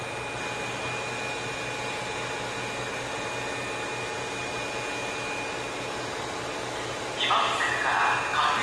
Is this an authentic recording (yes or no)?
yes